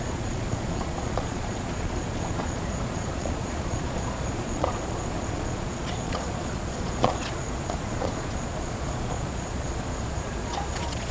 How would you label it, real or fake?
fake